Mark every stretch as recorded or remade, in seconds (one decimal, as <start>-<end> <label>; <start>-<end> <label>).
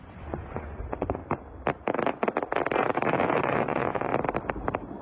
0.0-1.2 remade; 1.2-3.4 recorded; 3.4-4.1 remade; 4.1-5.0 recorded